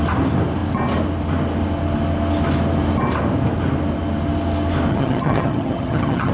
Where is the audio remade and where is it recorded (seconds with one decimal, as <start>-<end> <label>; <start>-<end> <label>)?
0.0-4.9 recorded; 4.9-6.3 remade